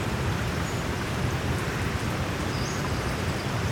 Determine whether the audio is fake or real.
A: fake